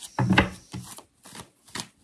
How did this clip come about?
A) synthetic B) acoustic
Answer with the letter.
B